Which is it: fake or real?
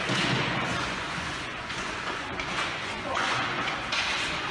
fake